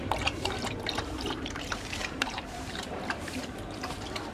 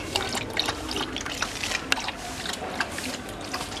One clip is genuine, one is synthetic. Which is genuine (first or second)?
second